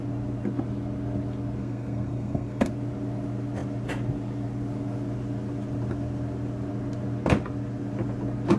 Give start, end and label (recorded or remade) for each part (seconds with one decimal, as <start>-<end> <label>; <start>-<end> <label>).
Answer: 0.0-1.6 recorded; 1.6-2.7 remade; 2.7-8.6 recorded